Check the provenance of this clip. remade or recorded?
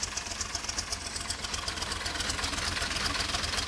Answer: recorded